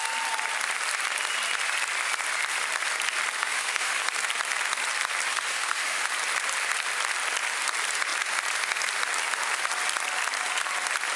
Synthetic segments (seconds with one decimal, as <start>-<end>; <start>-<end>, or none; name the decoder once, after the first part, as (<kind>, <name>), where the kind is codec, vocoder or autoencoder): 3.4-4.0 (autoencoder, DAC-VAE); 5.3-6.1